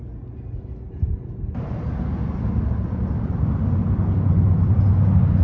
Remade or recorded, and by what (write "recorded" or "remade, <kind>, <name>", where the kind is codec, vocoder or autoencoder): recorded